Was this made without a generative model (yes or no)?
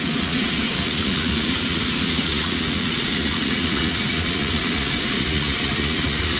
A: no